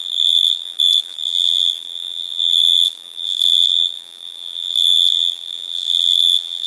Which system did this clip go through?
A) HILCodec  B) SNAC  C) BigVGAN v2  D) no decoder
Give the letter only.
C